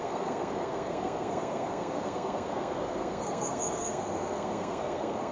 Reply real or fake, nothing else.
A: fake